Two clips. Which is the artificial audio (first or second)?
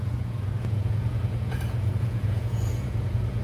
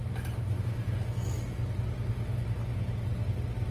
first